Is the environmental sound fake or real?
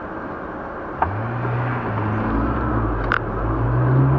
real